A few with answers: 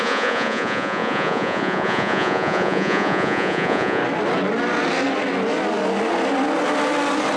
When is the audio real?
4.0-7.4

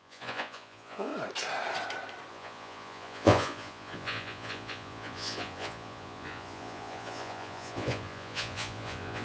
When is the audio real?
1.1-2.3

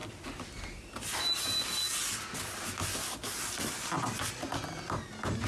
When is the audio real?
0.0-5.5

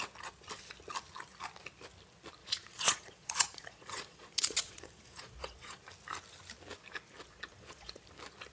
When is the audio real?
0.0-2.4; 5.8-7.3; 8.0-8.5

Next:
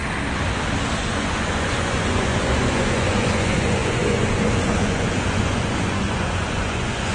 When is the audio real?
0.0-1.0

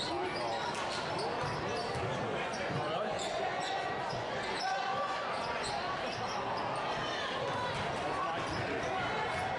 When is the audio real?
0.0-2.3; 5.7-9.6

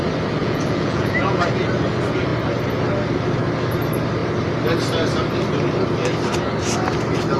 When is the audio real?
0.0-0.4; 1.4-7.4

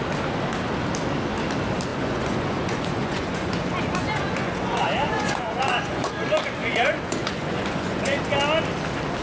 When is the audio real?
0.0-1.9; 6.1-6.6; 8.2-9.2